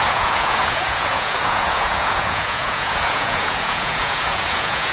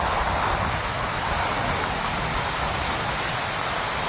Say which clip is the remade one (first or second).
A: first